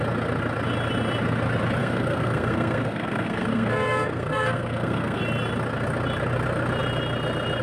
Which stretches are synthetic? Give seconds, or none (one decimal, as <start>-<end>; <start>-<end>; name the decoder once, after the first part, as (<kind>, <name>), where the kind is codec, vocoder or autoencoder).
1.8-5.2 (codec, SNAC)

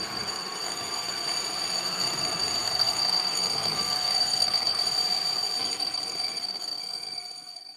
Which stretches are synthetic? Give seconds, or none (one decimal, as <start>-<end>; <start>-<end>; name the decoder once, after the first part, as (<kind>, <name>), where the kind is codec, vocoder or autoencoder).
0.0-1.3 (codec, SNAC); 1.8-4.8; 5.6-7.8

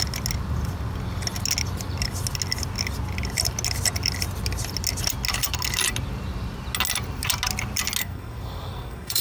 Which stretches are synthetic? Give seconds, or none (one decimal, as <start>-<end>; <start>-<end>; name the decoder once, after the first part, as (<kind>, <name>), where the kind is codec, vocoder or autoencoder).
8.0-9.2 (codec, SNAC)

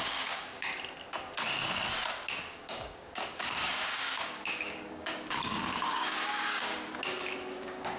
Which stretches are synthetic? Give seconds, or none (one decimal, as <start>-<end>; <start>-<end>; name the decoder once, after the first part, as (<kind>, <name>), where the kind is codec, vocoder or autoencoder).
0.0-0.7 (codec, DAC); 2.5-6.7; 7.2-8.0

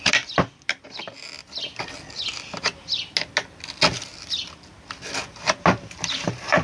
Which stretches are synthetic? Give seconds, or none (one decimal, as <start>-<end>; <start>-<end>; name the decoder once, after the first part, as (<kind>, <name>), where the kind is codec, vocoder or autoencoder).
none